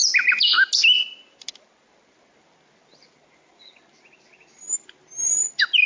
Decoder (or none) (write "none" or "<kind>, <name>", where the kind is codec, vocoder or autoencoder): none